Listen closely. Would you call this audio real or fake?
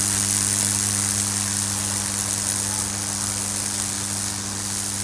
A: real